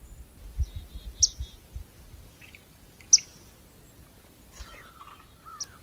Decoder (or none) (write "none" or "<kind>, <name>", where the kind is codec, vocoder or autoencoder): none